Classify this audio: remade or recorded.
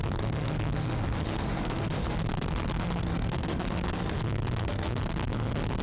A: remade